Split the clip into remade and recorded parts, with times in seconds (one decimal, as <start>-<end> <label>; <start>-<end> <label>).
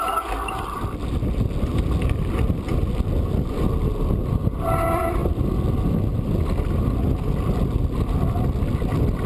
0.0-9.3 recorded